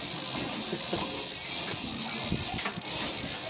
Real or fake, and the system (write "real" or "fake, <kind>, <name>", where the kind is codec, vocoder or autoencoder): real